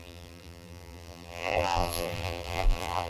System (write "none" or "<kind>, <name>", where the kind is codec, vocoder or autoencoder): vocoder, BigVGAN v2